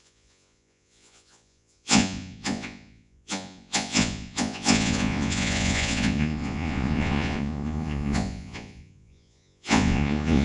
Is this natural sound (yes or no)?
no